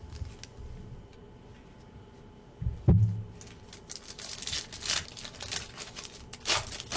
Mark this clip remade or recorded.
recorded